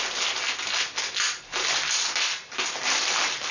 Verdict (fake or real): real